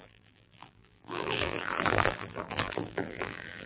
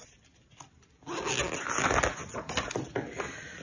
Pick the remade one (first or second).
first